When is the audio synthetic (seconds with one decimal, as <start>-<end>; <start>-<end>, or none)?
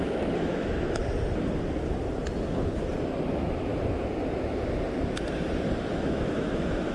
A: 0.0-1.0; 3.3-3.7; 5.9-6.9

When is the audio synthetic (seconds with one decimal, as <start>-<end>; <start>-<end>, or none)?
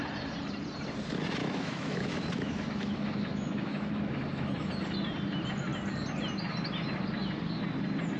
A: 1.4-4.7